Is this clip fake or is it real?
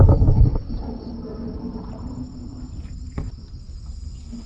real